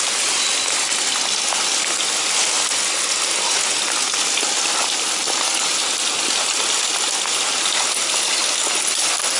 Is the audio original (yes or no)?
yes